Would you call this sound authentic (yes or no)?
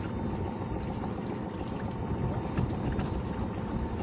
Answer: yes